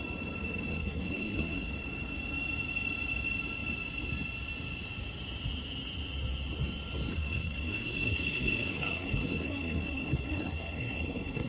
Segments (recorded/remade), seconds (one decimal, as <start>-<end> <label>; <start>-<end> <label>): 0.0-0.7 recorded; 0.7-1.7 remade; 1.7-7.1 recorded; 7.1-11.5 remade